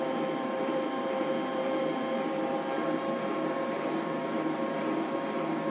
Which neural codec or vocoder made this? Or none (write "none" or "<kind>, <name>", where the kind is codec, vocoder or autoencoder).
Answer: vocoder, BigVGAN v2